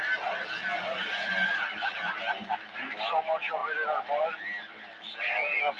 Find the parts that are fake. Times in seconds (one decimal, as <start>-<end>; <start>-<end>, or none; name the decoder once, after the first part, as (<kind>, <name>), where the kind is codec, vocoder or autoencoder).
none